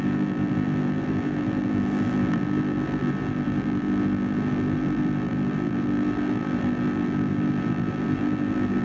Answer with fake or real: fake